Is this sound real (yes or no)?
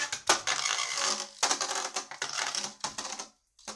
yes